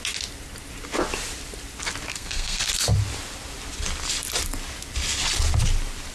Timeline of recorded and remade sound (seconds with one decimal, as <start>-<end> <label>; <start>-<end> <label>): 0.0-2.1 recorded; 2.1-2.6 remade; 2.6-6.1 recorded